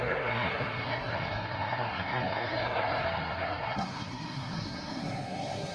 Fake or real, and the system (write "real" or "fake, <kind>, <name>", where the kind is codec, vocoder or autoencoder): fake, codec, SNAC